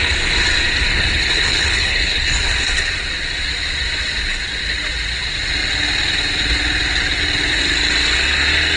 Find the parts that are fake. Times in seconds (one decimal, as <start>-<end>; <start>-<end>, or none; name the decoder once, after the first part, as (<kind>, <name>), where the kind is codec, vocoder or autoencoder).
0.9-2.5 (codec, HILCodec)